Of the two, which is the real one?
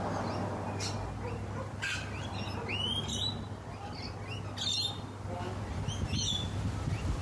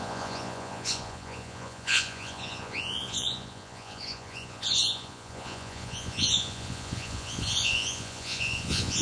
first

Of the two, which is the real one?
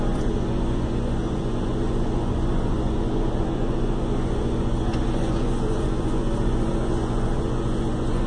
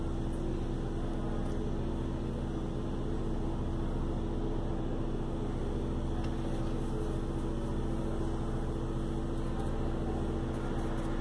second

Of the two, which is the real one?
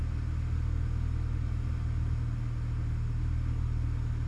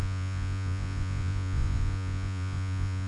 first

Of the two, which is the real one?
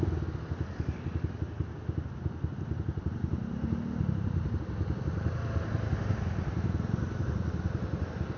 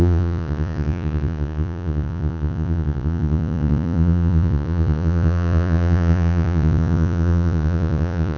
first